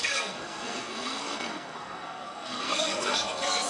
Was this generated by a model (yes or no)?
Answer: yes